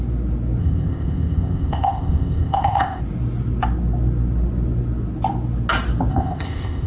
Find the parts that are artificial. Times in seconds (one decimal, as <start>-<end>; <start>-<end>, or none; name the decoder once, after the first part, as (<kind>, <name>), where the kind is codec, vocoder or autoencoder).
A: 0.6-3.0 (codec, ZipCodec); 6.1-6.9